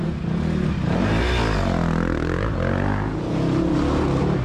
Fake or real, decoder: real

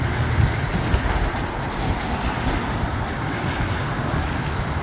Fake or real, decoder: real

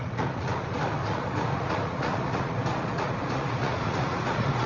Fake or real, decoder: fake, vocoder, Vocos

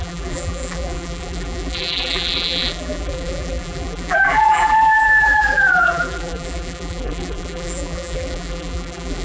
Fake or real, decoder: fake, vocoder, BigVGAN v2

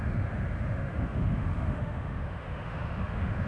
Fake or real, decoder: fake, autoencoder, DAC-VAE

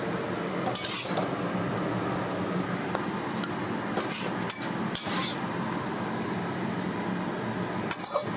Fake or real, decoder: real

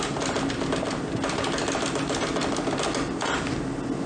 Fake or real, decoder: real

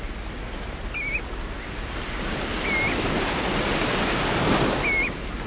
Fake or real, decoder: real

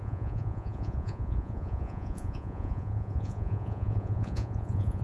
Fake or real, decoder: fake, vocoder, Vocos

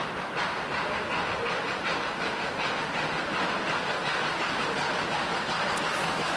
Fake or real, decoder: real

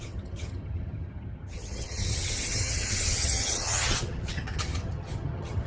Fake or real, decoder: fake, vocoder, HiFi-GAN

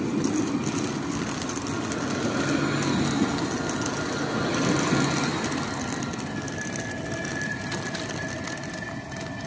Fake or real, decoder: real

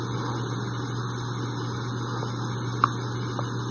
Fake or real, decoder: real